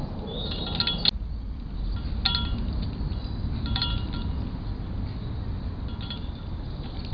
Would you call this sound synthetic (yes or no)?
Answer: no